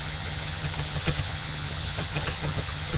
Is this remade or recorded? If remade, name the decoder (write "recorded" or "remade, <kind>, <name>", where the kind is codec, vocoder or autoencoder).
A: remade, vocoder, HiFi-GAN